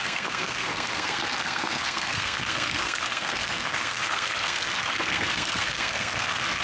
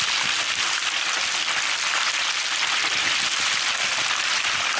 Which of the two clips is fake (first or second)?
first